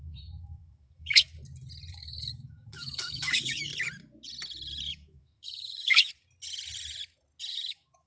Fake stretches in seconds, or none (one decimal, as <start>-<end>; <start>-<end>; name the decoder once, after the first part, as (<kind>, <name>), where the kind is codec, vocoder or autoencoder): 0.0-1.3 (autoencoder, DAC-VAE); 1.9-3.7; 4.9-6.1; 7.5-8.1